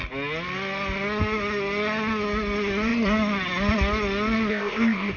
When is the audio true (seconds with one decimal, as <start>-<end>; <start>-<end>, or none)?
0.0-4.5